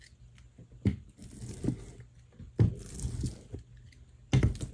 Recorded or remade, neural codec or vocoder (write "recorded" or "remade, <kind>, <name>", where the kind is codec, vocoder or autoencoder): recorded